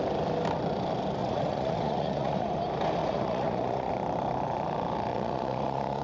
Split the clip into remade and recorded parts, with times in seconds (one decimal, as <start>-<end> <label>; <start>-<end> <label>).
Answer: 0.0-1.2 recorded; 1.2-2.5 remade; 2.5-3.0 recorded; 3.0-3.9 remade; 3.9-5.1 recorded; 5.1-6.0 remade